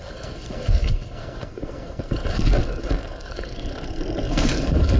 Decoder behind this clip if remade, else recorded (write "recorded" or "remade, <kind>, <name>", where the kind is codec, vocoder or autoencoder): remade, codec, SNAC